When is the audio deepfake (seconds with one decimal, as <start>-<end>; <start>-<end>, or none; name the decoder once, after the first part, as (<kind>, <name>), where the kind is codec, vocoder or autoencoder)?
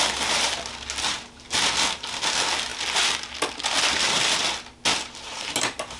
none